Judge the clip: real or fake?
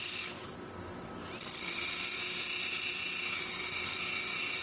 real